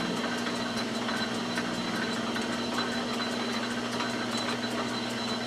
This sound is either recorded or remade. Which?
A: recorded